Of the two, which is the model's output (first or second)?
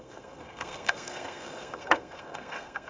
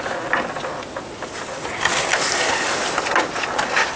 first